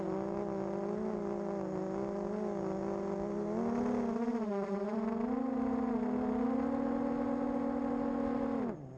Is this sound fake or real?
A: real